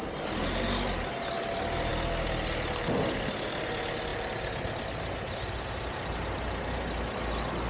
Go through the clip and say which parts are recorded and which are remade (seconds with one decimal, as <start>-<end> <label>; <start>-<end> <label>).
0.0-7.7 recorded